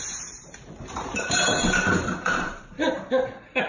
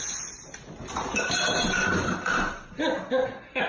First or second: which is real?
second